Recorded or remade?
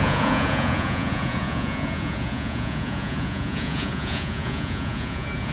remade